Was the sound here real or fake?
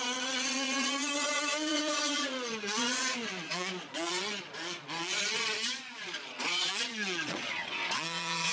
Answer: fake